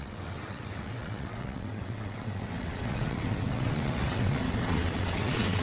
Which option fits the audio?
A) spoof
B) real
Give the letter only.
A